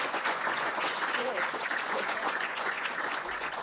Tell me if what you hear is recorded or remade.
remade